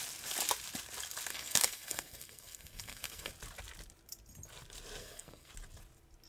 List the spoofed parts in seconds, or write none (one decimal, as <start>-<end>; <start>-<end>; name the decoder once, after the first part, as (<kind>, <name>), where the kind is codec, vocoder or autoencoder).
1.3-3.3 (codec, SNAC); 5.0-5.5